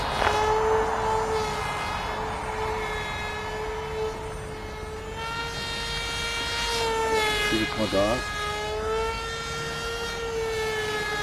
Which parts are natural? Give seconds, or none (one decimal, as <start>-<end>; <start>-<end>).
0.0-11.2